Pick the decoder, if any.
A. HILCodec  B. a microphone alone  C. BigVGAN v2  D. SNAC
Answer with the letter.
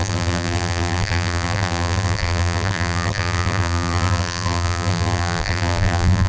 C